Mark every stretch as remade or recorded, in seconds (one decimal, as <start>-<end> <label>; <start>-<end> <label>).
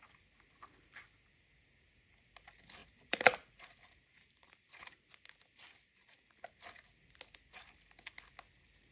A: 0.0-2.8 recorded; 2.8-4.9 remade; 4.9-5.9 recorded; 5.9-6.5 remade; 6.5-8.9 recorded